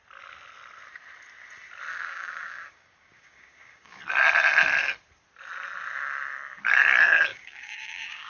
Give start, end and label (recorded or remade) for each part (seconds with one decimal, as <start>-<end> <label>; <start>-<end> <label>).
0.0-1.9 recorded; 1.9-4.0 remade; 4.0-7.3 recorded; 7.3-8.3 remade